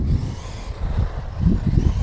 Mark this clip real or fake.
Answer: real